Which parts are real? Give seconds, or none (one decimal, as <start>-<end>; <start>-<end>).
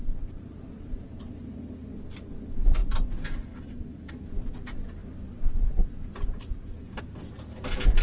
1.3-2.8; 4.1-5.0; 7.0-8.0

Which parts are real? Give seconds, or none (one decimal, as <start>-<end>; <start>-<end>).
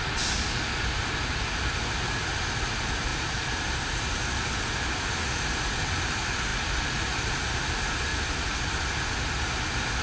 0.0-3.1; 4.1-8.1; 8.7-10.0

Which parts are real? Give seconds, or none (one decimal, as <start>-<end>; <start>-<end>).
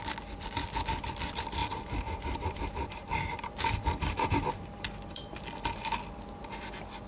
0.0-1.6; 5.9-7.1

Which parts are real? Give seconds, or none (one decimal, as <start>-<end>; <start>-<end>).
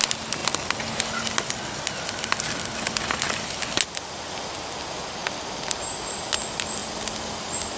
0.0-5.2; 6.3-7.8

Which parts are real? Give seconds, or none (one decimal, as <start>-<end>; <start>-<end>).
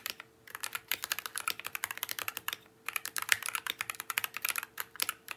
none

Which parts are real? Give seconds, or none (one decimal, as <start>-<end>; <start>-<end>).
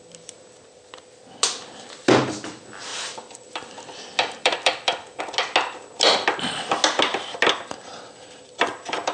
0.0-2.9; 5.2-9.1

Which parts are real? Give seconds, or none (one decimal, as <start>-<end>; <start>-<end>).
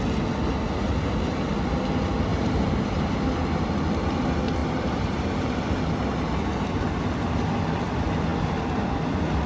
0.0-2.3; 3.0-4.6; 5.6-9.5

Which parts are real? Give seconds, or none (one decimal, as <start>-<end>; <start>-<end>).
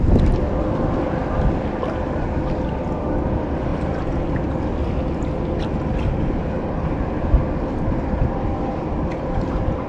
0.0-9.9